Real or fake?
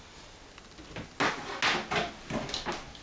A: real